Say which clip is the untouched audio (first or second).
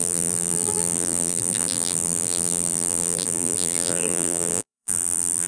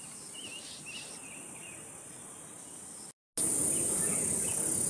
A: second